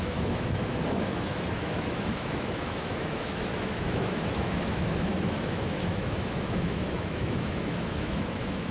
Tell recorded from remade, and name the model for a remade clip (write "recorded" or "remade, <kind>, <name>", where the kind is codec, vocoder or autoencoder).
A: remade, autoencoder, DAC-VAE